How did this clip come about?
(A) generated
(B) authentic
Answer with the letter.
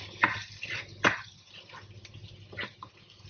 B